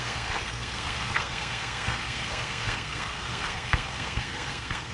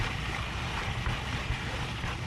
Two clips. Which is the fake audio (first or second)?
first